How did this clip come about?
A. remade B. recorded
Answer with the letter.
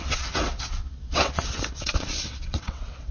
A